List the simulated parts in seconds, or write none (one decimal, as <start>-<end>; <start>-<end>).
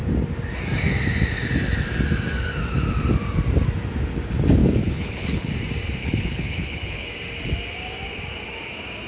4.6-5.5; 6.0-7.1